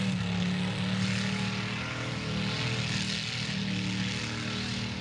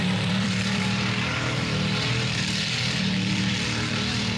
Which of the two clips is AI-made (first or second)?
second